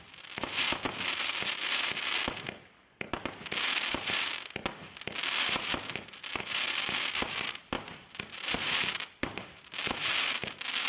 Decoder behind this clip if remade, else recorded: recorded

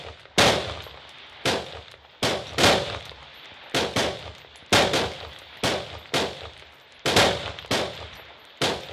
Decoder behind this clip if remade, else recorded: recorded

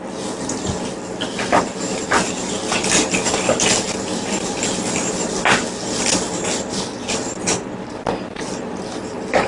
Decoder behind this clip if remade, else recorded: recorded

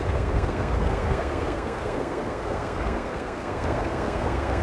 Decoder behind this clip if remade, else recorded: remade, codec, SNAC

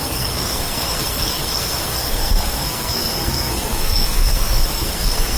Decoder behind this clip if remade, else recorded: remade, codec, SNAC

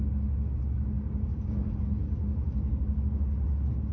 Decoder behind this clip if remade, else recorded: recorded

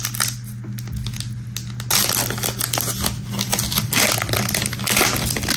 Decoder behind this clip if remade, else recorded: recorded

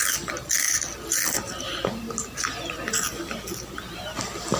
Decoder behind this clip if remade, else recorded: recorded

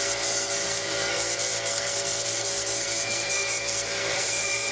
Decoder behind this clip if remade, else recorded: remade, codec, SNAC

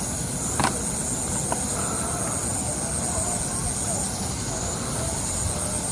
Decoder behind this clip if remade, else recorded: recorded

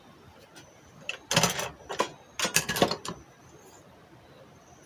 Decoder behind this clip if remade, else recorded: recorded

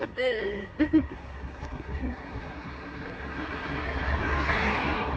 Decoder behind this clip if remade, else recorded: remade, codec, SNAC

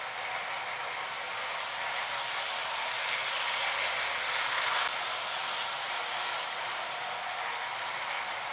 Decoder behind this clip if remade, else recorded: recorded